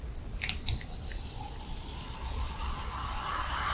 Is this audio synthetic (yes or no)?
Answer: yes